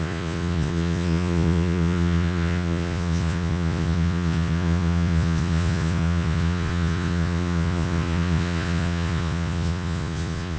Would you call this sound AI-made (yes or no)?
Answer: yes